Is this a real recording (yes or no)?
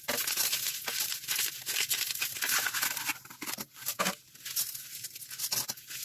yes